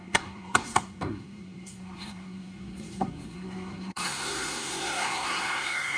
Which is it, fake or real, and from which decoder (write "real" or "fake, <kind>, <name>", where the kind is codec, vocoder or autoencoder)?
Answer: fake, codec, SNAC